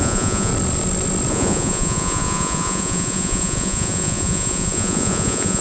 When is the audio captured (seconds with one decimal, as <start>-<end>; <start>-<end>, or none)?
0.5-1.3